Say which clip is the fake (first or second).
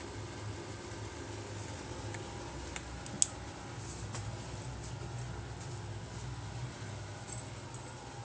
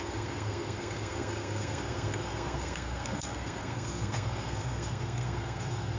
second